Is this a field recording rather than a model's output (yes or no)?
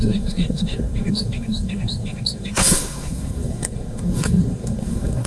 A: no